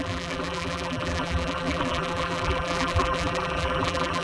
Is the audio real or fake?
fake